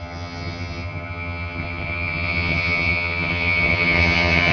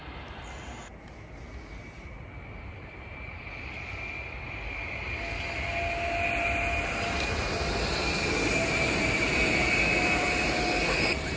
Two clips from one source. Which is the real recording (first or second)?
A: second